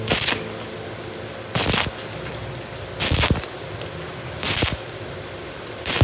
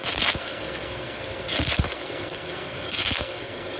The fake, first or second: second